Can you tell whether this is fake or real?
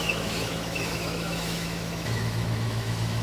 fake